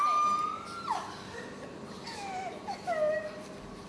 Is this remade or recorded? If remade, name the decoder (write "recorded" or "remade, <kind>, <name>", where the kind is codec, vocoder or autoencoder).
recorded